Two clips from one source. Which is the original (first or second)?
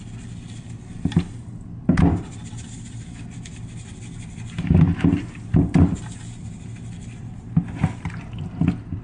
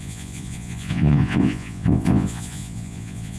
first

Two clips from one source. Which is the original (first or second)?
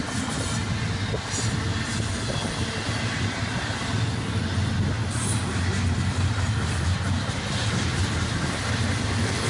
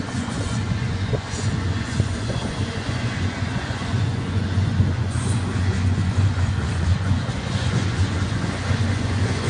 first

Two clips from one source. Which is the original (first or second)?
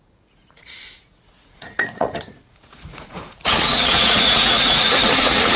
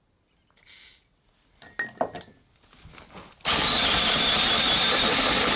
second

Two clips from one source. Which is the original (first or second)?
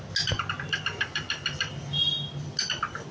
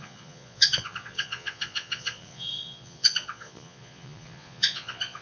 first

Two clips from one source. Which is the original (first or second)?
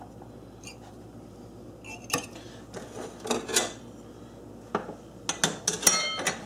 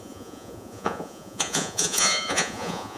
first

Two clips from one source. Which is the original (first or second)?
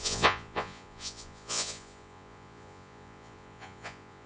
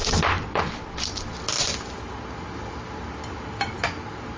second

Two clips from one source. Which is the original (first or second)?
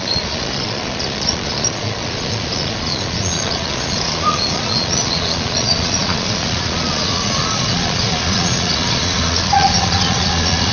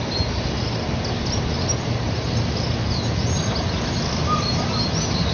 second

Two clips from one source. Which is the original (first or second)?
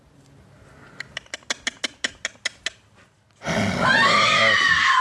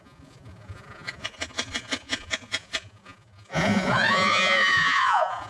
first